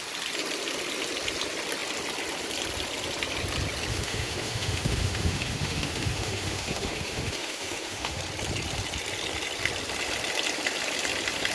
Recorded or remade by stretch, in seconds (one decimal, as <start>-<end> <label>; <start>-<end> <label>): 0.0-3.9 recorded; 3.9-8.2 remade; 8.2-11.5 recorded